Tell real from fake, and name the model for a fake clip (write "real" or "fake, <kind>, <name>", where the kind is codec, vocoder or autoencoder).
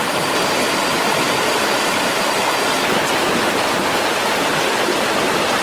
real